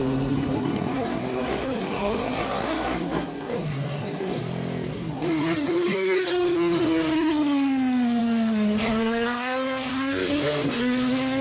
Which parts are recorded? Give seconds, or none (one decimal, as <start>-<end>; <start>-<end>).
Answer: 4.4-4.9